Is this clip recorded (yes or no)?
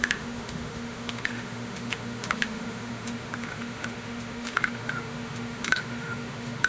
no